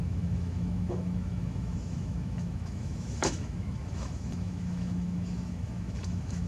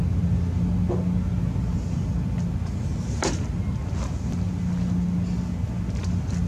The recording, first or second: second